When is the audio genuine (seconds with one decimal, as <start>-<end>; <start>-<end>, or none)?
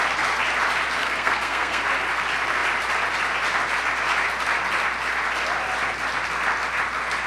0.0-1.0; 1.8-7.3